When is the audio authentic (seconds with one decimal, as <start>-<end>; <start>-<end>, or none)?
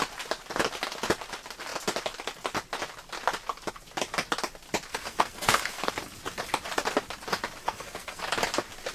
0.0-4.9; 5.9-7.6; 8.2-8.9